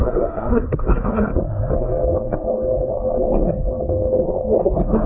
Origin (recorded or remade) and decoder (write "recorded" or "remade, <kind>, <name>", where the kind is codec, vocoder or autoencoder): remade, codec, SNAC